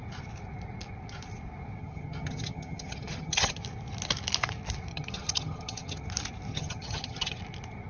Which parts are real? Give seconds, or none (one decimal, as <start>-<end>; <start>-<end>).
0.0-1.8; 3.6-4.9; 6.0-6.5; 7.4-7.9